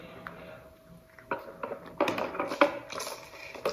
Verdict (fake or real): real